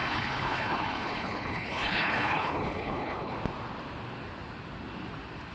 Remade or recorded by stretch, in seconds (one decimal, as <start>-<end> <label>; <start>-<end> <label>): 0.0-3.3 remade; 3.3-5.5 recorded